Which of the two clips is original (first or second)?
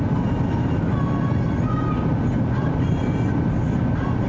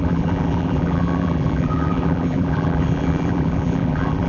first